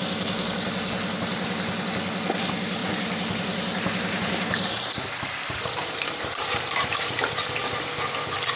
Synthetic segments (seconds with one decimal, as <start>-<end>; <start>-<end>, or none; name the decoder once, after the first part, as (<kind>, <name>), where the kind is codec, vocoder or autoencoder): 2.8-7.8 (vocoder, BigVGAN v2)